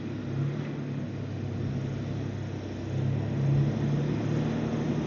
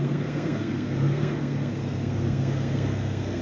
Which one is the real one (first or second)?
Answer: first